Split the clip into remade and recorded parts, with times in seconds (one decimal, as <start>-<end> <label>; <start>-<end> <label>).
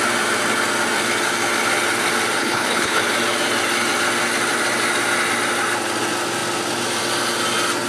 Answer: 0.0-2.4 recorded; 2.4-3.0 remade; 3.0-7.9 recorded